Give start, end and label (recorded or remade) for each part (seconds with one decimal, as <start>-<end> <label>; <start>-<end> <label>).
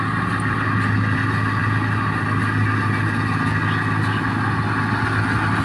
0.0-5.6 recorded